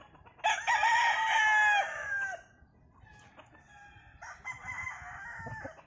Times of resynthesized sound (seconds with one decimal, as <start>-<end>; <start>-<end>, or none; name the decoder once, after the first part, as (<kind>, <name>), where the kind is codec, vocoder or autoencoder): none